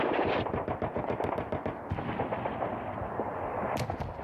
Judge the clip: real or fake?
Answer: real